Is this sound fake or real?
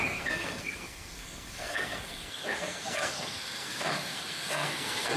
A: fake